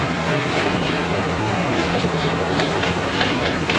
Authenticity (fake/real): fake